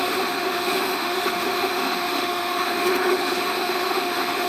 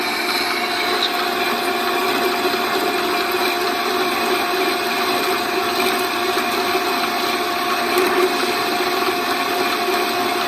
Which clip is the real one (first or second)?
second